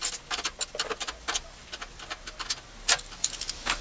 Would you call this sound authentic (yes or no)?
yes